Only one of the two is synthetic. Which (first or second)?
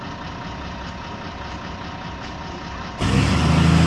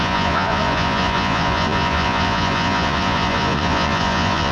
second